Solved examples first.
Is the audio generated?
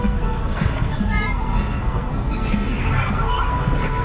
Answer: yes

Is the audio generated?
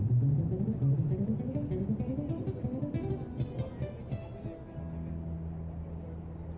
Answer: no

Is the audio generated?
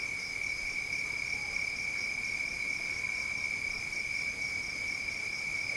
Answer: no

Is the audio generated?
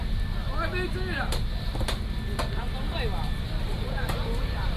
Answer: no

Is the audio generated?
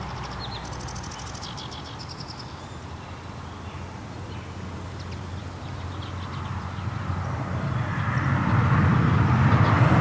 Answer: no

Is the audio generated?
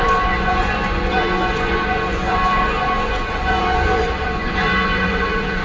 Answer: yes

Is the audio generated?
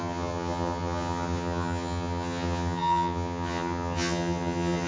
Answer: yes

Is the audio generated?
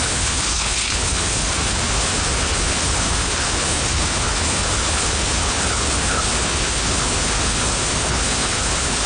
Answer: yes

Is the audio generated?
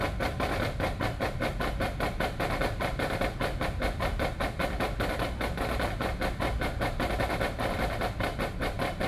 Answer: no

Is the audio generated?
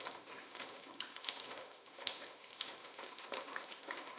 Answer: yes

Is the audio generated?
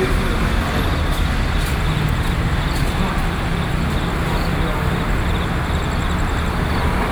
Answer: no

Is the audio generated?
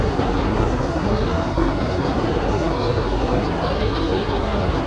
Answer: yes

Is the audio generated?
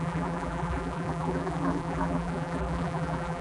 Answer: yes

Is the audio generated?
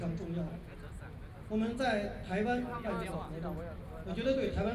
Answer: no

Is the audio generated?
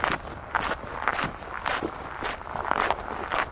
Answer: no